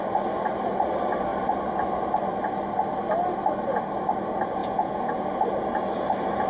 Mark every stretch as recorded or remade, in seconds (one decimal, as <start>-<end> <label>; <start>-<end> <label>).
0.0-4.6 recorded; 4.6-5.3 remade; 5.3-6.5 recorded